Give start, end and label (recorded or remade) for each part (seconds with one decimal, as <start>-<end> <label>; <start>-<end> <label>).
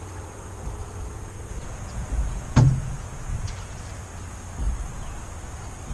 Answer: 0.0-0.8 recorded; 0.8-3.8 remade; 3.8-5.9 recorded